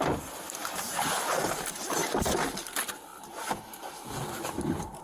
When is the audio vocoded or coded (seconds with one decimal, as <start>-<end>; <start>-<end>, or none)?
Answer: none